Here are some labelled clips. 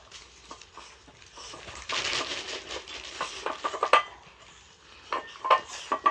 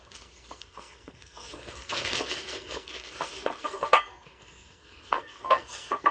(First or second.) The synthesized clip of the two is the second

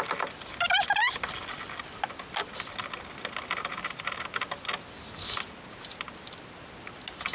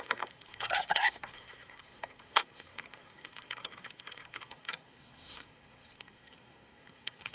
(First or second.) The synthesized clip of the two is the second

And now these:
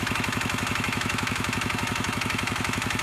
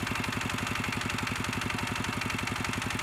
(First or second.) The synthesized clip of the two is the first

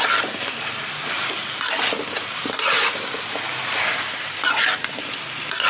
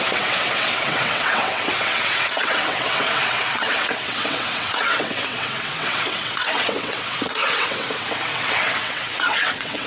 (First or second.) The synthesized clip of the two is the second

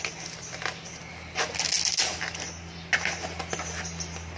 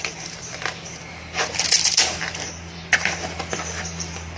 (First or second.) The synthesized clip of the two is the second